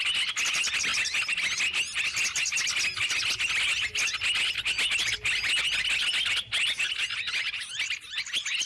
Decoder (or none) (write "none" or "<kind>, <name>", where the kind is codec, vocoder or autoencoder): none